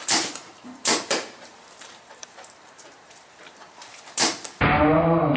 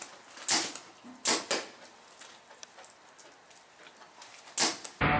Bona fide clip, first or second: second